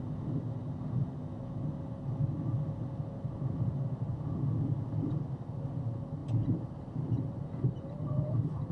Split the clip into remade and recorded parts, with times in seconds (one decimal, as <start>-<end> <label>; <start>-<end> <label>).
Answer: 0.0-6.2 recorded; 6.2-8.7 remade